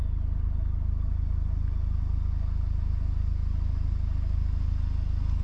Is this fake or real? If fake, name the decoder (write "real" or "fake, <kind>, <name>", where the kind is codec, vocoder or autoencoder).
real